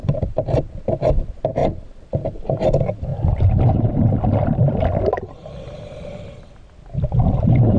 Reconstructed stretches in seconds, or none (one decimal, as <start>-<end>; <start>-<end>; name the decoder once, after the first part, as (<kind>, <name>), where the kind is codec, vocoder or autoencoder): 0.0-0.6 (vocoder, BigVGAN v2); 1.6-2.5; 3.1-4.1